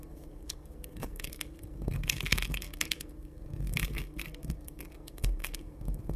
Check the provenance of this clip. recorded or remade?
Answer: remade